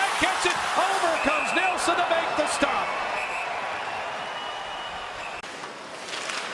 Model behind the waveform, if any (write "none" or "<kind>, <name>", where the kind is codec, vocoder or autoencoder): none